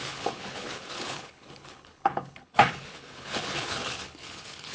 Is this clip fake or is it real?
fake